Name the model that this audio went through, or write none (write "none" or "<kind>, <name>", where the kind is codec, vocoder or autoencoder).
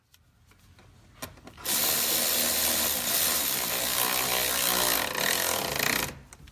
none